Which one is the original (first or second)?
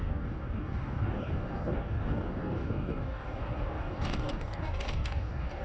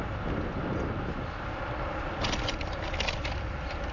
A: second